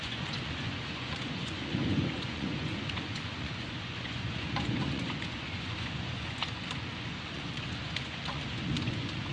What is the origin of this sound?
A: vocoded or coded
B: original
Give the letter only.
A